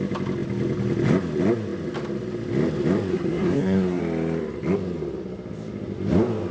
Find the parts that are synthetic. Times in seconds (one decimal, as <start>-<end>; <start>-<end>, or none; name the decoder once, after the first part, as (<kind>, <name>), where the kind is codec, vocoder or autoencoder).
3.1-4.0 (codec, SNAC)

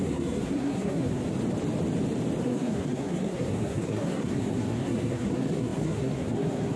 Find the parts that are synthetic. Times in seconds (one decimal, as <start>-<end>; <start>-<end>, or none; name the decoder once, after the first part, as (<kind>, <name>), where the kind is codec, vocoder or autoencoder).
0.0-1.2 (codec, SNAC); 2.4-6.8

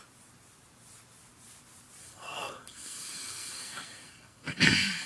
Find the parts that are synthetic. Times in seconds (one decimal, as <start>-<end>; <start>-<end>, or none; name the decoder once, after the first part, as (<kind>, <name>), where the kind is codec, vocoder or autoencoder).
2.0-5.1 (codec, SNAC)

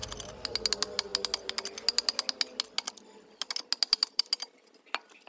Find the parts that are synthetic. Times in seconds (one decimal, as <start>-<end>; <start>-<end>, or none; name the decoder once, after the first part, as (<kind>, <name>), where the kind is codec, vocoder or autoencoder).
none

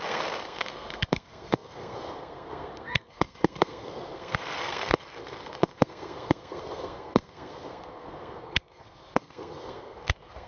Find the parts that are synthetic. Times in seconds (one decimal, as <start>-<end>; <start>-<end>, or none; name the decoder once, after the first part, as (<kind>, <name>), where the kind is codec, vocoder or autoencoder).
0.0-10.5 (codec, SNAC)

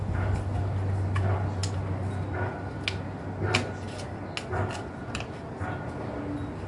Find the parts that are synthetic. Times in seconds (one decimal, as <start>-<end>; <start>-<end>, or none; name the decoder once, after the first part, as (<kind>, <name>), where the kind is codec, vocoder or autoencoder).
none